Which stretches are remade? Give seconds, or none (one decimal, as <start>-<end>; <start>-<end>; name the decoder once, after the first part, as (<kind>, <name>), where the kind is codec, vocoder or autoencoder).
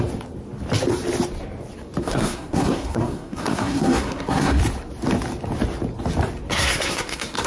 2.0-4.6 (codec, SNAC); 6.5-7.5